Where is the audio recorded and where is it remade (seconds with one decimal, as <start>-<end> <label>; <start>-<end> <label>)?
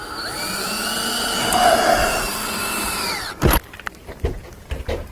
0.0-2.0 recorded; 2.0-4.4 remade; 4.4-5.1 recorded